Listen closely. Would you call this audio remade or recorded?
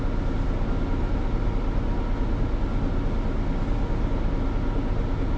recorded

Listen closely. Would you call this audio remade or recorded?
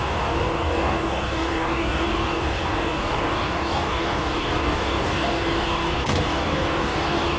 remade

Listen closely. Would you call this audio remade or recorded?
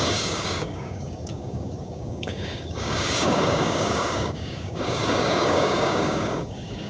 remade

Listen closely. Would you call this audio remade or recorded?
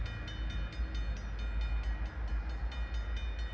recorded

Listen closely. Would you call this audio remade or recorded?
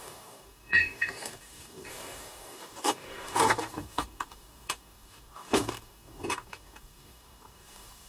remade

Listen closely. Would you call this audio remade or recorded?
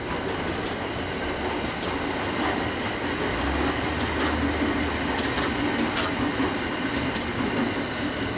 recorded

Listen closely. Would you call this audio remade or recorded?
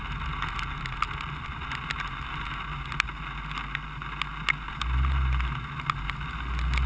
recorded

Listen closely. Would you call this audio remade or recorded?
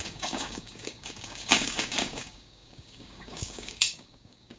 remade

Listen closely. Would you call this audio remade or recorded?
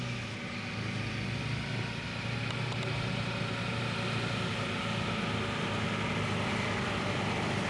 recorded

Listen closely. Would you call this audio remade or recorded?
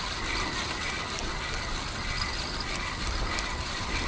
recorded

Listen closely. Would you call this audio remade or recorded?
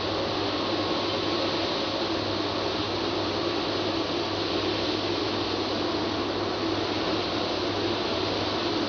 recorded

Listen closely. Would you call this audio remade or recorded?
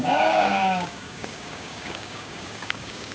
remade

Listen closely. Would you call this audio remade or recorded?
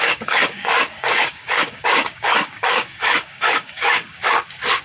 remade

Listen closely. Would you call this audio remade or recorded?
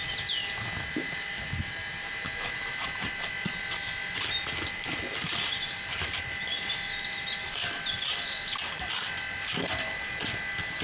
recorded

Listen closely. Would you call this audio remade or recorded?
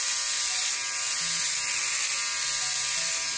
recorded